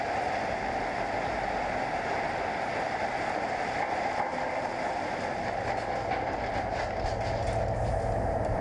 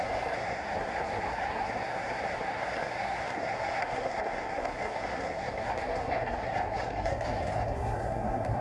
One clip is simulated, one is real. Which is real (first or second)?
first